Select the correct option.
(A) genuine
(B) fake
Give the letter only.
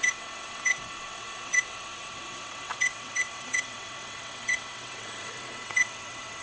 B